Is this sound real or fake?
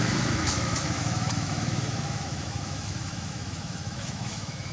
fake